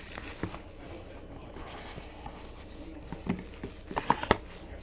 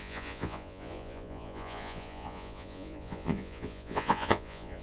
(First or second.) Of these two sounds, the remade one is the second